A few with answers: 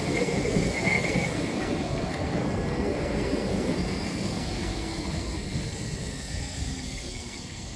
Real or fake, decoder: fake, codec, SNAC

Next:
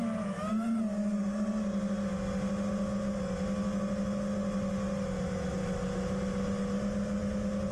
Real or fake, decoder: real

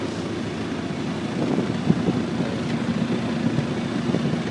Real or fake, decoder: real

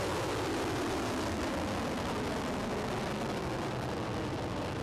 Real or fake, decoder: real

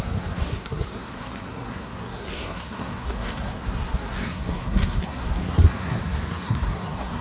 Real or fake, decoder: fake, codec, SNAC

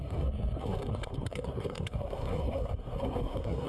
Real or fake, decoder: fake, codec, SNAC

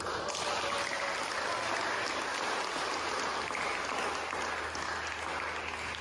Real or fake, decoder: real